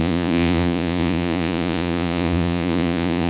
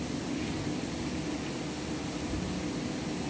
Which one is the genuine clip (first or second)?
second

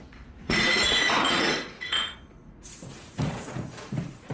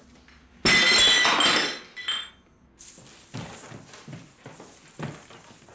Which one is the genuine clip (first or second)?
second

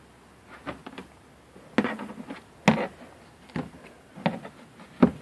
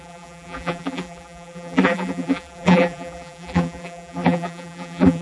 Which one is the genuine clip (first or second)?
first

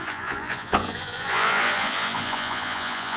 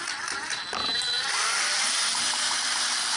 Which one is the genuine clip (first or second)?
second